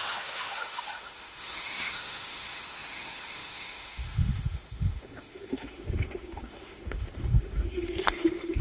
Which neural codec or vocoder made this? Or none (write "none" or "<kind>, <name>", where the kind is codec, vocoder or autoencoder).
autoencoder, DAC-VAE